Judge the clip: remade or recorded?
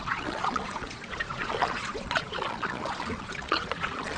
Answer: remade